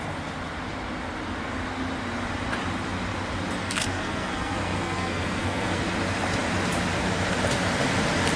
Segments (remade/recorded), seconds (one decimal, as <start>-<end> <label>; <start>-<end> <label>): 0.0-3.6 recorded; 3.6-5.8 remade; 5.8-8.4 recorded